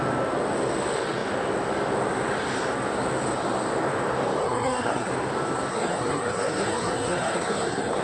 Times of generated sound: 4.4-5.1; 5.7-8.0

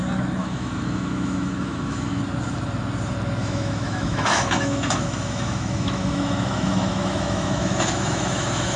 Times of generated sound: 0.4-2.2; 3.4-8.8

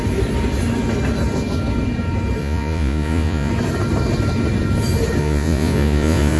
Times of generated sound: 2.4-3.5; 5.2-6.4

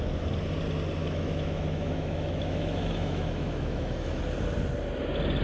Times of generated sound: 1.0-4.2

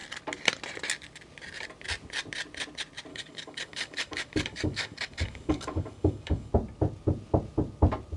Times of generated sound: 3.1-6.5

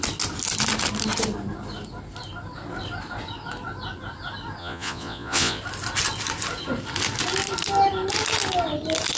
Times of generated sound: 4.6-5.6

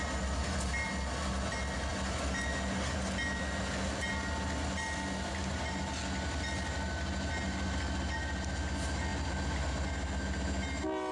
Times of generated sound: 5.4-6.0